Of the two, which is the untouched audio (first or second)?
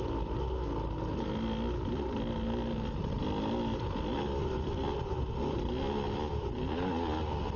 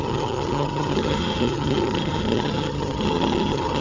first